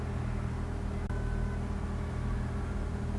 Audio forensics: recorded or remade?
recorded